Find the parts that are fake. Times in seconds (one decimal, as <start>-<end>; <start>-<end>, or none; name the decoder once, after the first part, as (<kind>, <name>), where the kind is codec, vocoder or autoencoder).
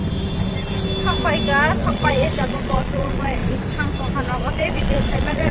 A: 1.8-3.4 (vocoder, Vocos); 4.5-5.5